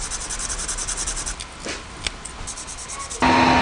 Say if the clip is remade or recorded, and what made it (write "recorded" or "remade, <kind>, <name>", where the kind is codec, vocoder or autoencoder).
recorded